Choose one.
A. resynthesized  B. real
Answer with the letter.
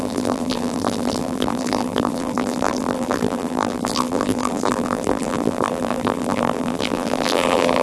A